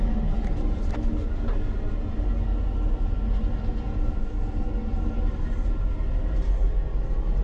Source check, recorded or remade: recorded